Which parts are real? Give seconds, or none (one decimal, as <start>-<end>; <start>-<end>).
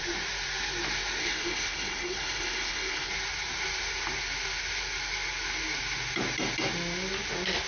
0.0-1.2; 3.1-7.7